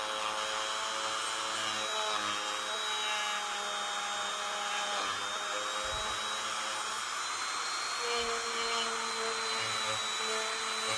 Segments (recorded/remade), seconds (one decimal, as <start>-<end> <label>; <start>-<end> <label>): 0.0-4.3 recorded; 4.3-5.2 remade; 5.2-11.0 recorded